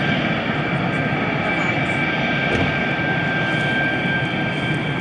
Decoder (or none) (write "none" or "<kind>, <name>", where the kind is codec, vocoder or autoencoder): none